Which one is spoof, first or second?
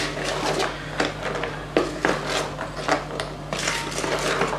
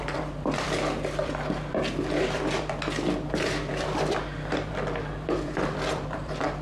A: second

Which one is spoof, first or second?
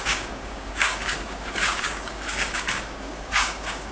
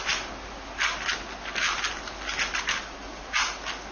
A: first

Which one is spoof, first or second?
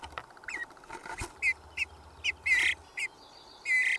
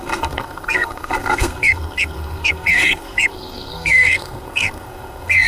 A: second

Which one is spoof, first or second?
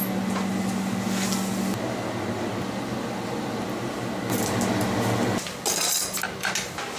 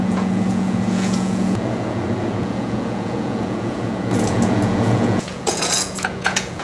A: second